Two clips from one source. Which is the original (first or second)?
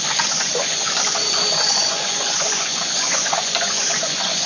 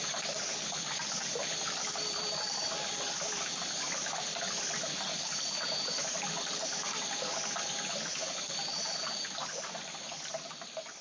second